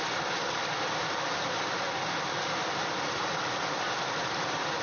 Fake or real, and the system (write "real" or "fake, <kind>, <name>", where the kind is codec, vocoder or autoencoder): real